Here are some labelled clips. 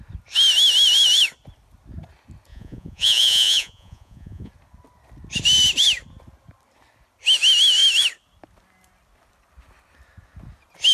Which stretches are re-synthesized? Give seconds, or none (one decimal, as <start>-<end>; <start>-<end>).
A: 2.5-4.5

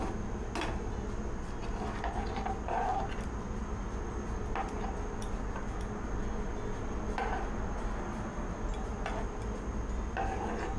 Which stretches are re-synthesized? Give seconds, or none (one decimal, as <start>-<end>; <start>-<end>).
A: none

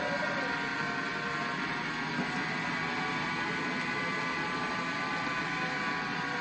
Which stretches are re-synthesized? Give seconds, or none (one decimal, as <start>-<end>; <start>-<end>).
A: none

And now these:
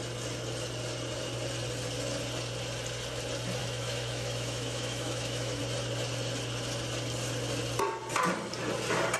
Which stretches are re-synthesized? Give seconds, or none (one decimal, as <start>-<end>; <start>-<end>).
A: 3.6-5.6

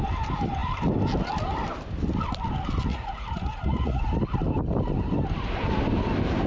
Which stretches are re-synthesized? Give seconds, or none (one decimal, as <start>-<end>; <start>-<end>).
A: 2.9-4.0

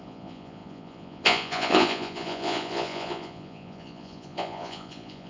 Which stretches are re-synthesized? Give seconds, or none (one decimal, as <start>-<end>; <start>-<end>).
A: 0.0-5.3